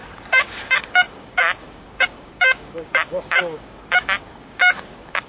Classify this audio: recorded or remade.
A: remade